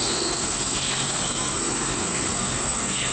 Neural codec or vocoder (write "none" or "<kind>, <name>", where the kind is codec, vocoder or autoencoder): codec, SNAC